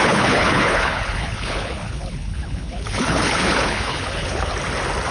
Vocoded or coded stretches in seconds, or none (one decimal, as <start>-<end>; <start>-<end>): 0.0-4.5